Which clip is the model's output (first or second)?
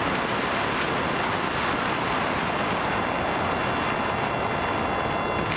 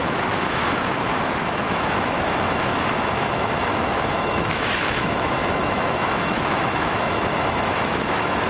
second